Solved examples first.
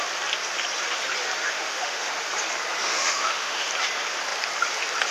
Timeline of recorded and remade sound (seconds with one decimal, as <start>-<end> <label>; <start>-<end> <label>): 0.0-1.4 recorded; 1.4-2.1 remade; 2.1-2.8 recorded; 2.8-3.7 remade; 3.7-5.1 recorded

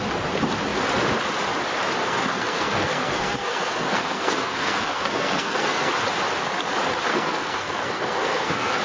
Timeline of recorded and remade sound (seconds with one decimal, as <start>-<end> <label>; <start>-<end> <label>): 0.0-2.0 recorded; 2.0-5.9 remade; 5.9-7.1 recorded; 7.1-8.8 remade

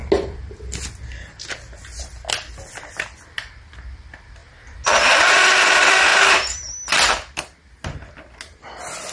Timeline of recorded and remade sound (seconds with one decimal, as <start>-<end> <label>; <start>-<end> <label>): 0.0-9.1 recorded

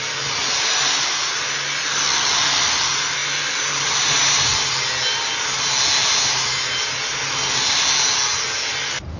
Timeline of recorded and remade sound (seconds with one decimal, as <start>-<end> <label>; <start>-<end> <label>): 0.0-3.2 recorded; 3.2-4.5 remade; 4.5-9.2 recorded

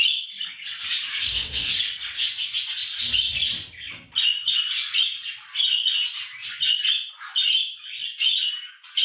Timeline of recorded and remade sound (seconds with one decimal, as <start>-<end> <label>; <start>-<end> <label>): 0.0-1.1 recorded; 1.1-1.7 remade; 1.7-9.0 recorded

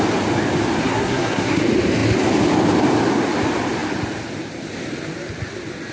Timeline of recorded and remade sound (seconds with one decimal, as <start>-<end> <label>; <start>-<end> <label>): 0.0-0.8 recorded; 0.8-1.6 remade; 1.6-5.9 recorded